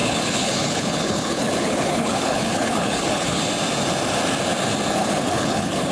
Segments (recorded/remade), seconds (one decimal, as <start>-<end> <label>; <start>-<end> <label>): 0.0-3.4 remade; 3.4-5.0 recorded; 5.0-5.9 remade